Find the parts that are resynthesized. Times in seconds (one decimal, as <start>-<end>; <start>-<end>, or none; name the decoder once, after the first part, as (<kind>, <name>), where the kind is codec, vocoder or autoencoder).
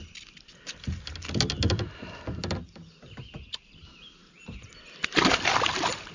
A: none